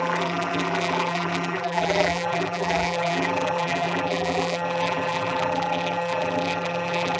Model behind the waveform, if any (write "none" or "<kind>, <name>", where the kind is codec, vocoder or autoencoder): vocoder, BigVGAN v2